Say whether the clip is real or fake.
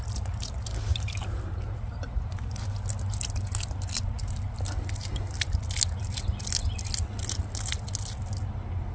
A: real